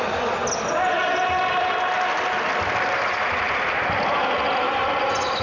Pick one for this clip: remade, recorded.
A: recorded